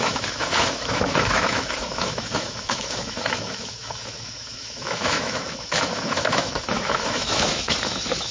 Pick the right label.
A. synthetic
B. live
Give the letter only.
A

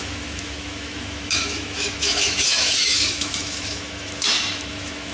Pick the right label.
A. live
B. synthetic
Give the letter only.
B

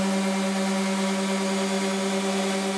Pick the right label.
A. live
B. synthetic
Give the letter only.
A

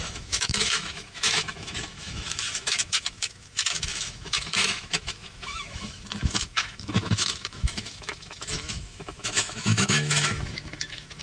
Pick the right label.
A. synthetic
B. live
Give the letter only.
A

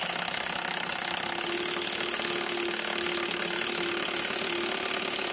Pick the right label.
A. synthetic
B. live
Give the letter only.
B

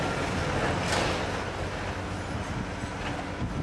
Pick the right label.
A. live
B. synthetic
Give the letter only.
A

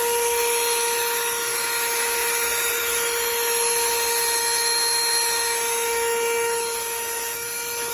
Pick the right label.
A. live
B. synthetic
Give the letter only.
B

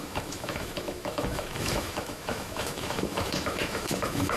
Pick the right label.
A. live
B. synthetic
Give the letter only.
B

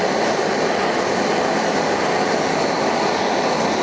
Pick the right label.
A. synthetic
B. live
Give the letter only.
B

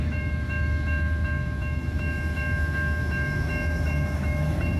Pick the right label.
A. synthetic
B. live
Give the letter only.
A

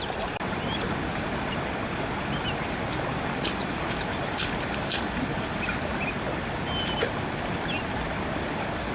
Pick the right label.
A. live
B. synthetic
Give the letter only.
A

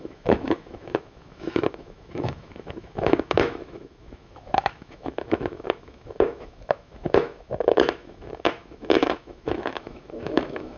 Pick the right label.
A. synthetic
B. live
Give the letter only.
A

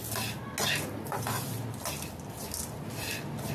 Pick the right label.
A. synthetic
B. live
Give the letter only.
B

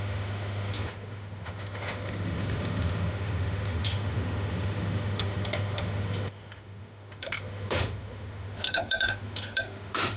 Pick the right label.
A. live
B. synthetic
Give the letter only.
B